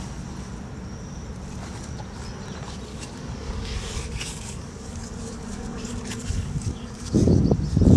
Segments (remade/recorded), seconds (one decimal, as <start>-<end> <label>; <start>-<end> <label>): 0.0-2.9 recorded; 2.9-7.4 remade; 7.4-8.0 recorded